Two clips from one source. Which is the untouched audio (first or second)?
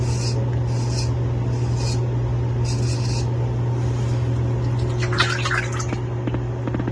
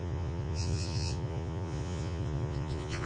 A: first